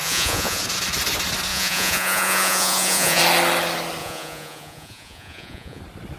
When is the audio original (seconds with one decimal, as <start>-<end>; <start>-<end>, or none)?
0.6-1.5; 3.2-4.0; 5.8-6.2